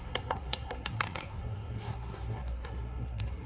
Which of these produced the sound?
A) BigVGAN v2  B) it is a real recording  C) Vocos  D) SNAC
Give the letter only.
D